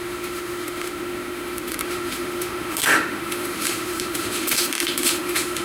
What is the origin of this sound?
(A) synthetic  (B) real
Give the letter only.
A